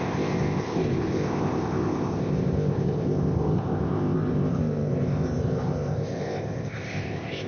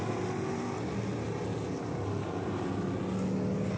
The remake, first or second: first